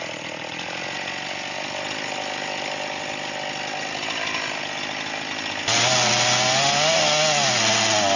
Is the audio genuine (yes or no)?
yes